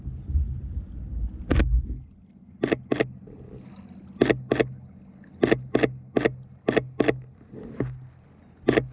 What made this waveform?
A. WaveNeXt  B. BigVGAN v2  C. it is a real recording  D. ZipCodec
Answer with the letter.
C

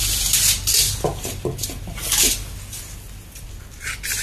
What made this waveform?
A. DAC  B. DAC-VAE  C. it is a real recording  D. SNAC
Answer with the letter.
C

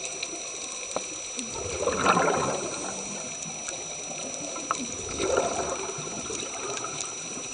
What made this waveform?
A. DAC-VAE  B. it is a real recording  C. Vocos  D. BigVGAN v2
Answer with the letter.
B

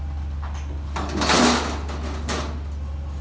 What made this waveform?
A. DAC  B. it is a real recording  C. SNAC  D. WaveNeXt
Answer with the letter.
B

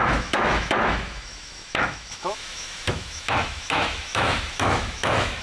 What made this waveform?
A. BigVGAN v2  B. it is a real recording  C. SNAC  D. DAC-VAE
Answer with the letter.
D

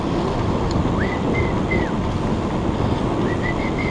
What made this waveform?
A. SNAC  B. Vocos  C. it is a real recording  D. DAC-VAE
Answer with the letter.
C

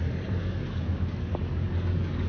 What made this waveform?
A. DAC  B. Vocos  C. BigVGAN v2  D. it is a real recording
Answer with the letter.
A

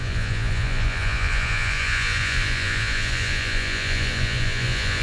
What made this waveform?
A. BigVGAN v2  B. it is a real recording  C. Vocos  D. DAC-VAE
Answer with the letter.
C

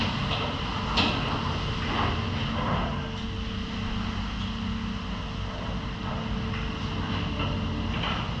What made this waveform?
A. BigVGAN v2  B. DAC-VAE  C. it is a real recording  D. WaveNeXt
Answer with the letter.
C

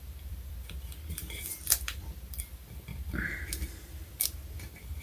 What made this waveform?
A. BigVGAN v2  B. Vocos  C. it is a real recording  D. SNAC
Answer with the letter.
A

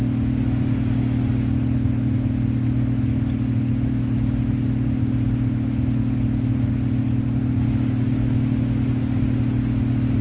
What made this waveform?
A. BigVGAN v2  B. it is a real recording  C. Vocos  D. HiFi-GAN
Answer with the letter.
B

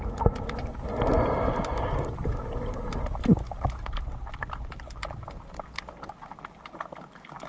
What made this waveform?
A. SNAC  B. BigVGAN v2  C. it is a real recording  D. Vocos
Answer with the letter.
C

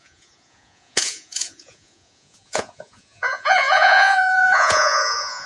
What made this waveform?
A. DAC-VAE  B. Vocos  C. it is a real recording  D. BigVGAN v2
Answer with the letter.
B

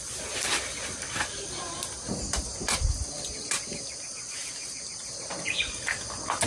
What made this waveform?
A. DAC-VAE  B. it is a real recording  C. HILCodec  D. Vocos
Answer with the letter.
B